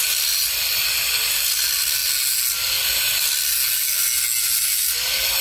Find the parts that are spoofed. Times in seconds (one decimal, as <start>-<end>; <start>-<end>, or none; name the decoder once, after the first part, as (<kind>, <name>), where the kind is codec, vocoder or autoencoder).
none